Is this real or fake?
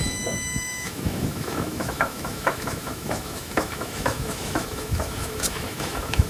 fake